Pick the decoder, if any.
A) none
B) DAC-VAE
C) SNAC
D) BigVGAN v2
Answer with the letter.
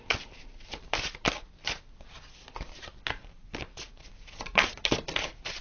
A